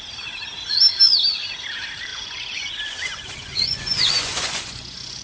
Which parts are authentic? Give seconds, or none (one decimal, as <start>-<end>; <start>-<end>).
0.0-2.1

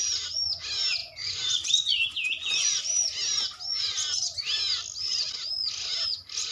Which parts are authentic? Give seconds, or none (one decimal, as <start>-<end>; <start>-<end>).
0.0-1.0; 2.8-6.5

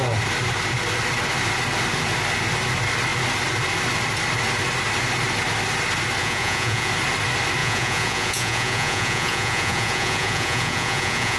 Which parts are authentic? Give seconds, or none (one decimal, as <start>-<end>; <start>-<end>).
0.0-6.2; 6.9-7.6

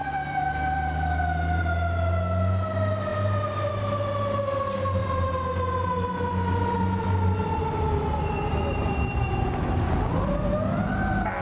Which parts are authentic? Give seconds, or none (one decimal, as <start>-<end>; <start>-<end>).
0.0-11.4

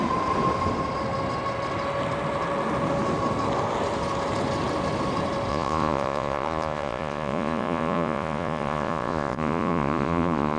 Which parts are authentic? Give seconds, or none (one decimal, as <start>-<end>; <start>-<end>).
0.0-5.5